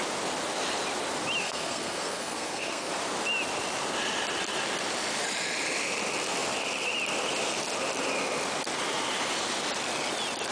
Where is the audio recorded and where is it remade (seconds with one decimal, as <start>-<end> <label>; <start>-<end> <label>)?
0.0-1.4 recorded; 1.4-2.9 remade; 2.9-10.5 recorded